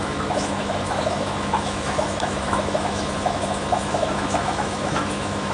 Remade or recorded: remade